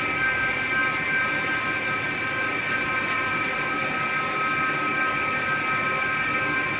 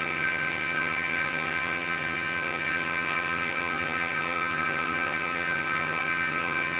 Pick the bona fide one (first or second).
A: first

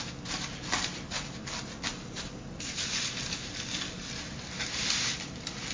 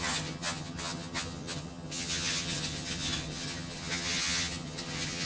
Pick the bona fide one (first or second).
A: first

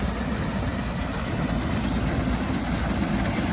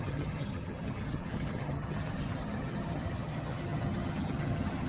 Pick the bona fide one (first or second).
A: first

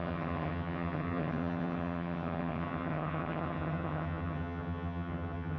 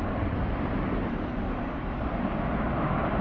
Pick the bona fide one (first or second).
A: second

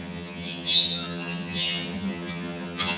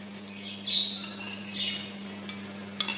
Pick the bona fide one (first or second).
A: second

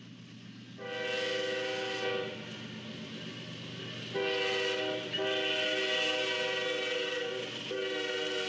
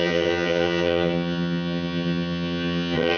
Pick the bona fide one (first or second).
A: first